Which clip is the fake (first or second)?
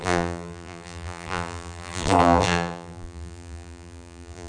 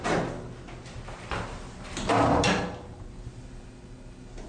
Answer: first